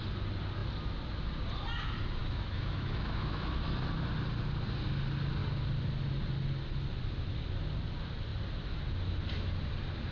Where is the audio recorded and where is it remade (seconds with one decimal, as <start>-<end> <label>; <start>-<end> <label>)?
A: 0.0-2.2 recorded; 2.2-3.6 remade; 3.6-10.1 recorded